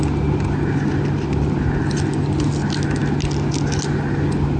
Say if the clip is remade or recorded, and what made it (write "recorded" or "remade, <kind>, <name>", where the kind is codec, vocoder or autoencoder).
recorded